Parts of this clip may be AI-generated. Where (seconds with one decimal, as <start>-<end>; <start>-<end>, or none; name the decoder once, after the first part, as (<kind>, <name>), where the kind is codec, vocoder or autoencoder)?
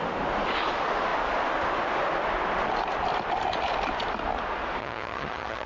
4.8-5.7 (vocoder, HiFi-GAN)